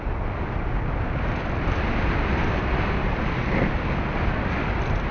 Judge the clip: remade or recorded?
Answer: recorded